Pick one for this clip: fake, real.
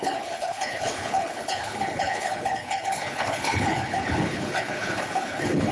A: fake